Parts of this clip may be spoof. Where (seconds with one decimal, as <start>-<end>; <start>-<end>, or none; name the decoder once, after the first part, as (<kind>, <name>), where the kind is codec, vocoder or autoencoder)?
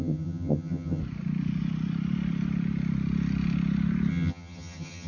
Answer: 0.0-1.0 (vocoder, HiFi-GAN); 4.1-5.1